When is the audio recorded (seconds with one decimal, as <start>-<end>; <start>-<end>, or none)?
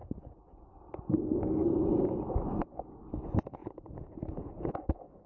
0.0-3.6; 4.7-5.3